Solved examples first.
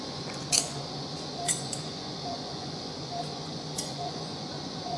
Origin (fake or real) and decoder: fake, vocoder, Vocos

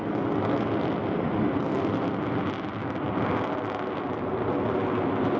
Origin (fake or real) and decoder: real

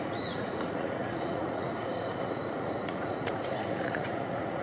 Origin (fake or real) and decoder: fake, vocoder, Vocos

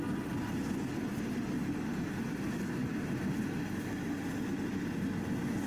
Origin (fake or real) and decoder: real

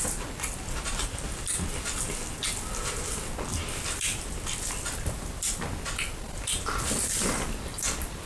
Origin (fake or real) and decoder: real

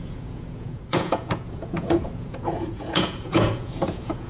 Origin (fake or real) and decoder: fake, vocoder, Vocos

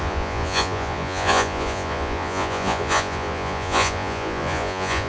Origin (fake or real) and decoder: fake, vocoder, Vocos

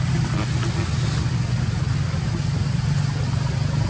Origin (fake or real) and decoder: real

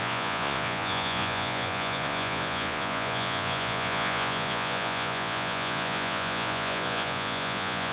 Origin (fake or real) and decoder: fake, vocoder, Vocos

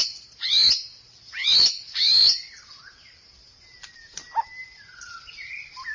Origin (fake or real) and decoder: real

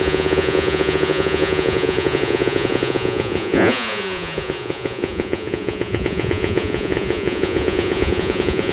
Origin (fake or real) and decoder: fake, vocoder, Vocos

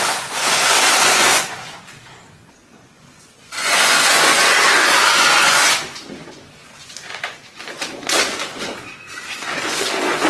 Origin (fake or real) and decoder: fake, vocoder, Vocos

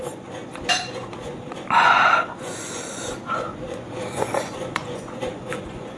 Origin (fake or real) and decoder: fake, vocoder, Vocos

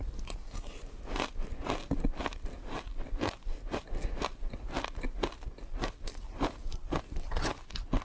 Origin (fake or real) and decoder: real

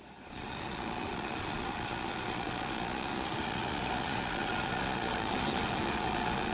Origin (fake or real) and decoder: fake, vocoder, Vocos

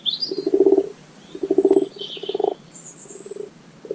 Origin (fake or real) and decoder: real